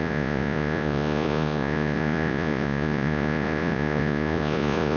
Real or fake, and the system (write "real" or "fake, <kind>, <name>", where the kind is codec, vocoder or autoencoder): fake, vocoder, Vocos